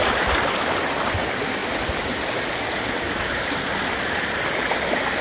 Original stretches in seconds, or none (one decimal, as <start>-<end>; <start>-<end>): 1.0-5.2